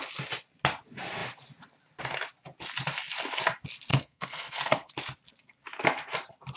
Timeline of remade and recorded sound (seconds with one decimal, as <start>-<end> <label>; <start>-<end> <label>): 0.0-3.9 recorded; 3.9-4.9 remade; 4.9-6.6 recorded